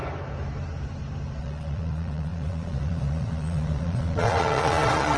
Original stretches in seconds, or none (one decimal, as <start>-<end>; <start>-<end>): 0.0-1.4